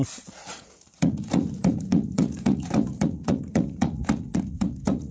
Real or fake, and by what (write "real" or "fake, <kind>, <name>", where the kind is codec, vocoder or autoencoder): fake, vocoder, Vocos